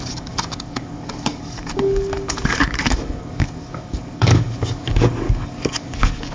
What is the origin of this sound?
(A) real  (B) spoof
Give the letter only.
B